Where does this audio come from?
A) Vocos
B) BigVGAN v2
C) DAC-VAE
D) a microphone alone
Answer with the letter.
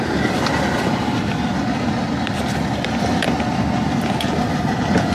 D